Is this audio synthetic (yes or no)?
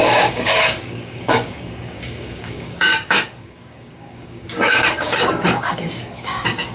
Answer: yes